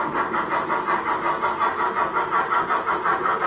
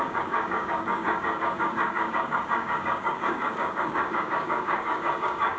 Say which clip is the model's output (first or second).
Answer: second